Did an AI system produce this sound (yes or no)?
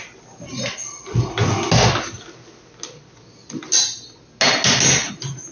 no